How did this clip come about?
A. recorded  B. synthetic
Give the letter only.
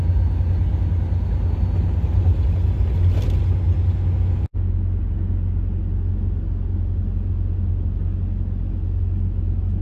A